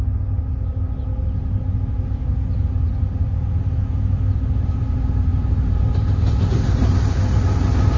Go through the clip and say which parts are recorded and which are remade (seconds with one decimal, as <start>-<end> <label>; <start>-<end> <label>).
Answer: 0.0-5.3 recorded; 5.3-7.1 remade; 7.1-8.0 recorded